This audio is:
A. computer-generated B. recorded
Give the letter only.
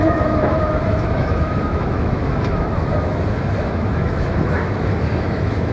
A